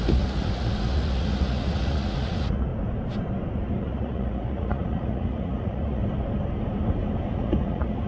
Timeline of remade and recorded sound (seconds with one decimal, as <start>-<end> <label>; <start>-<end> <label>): 0.0-2.7 remade; 2.7-3.8 recorded; 3.8-6.0 remade; 6.0-7.3 recorded; 7.3-8.1 remade